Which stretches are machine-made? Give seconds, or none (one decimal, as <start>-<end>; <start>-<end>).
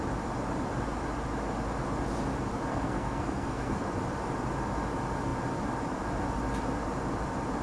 2.7-3.8